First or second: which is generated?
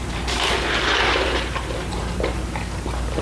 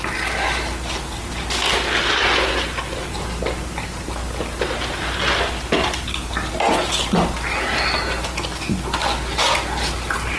first